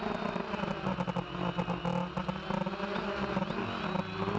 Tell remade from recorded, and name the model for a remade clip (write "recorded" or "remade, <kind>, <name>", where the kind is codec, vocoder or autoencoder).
recorded